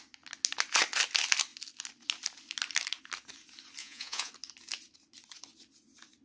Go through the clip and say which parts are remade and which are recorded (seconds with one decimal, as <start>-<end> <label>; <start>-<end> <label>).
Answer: 0.0-3.8 recorded; 3.8-4.3 remade; 4.3-6.2 recorded